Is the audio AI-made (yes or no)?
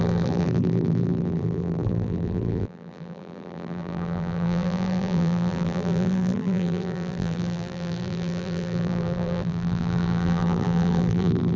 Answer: yes